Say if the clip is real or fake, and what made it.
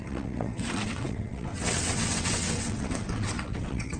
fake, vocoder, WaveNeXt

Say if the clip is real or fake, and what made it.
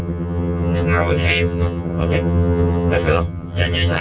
fake, vocoder, HiFi-GAN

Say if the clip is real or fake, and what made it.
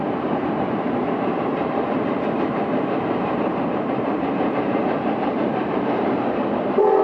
fake, vocoder, BigVGAN v2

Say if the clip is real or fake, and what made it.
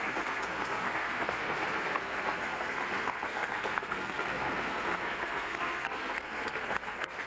fake, codec, SNAC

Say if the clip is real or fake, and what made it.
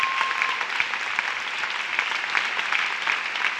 real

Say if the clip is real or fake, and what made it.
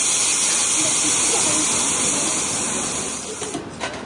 real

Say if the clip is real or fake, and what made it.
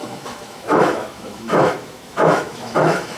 fake, autoencoder, DAC-VAE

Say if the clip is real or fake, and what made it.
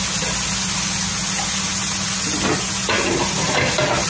real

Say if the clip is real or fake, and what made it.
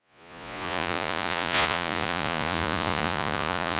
fake, vocoder, Vocos